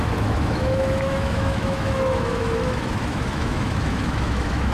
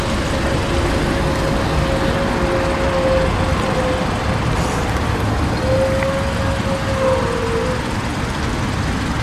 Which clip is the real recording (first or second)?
second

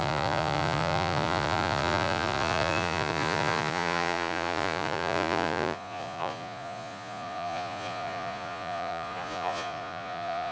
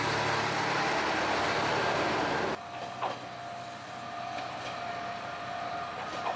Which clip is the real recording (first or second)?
second